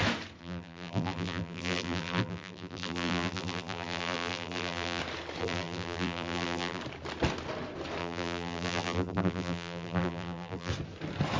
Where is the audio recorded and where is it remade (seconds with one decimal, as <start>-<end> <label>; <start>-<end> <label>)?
0.0-0.4 recorded; 0.4-5.0 remade; 5.0-5.4 recorded; 5.4-6.8 remade; 6.8-8.0 recorded; 8.0-10.7 remade; 10.7-11.4 recorded